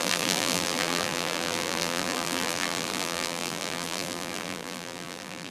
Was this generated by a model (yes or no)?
yes